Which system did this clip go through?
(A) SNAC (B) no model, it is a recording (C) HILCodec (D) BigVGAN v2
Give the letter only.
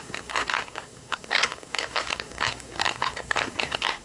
A